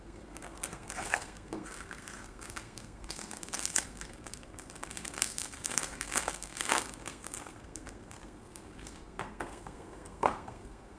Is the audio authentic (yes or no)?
no